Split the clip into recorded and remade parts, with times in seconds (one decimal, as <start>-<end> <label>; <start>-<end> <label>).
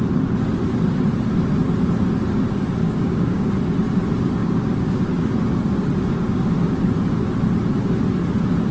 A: 0.0-2.8 recorded; 2.8-3.5 remade; 3.5-4.4 recorded; 4.4-5.0 remade; 5.0-8.7 recorded